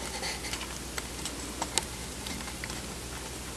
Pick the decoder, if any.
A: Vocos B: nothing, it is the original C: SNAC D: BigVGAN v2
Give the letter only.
B